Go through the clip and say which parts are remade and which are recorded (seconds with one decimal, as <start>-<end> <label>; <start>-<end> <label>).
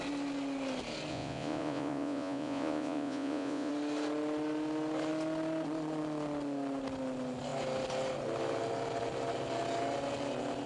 0.0-1.1 recorded; 1.1-3.7 remade; 3.7-10.7 recorded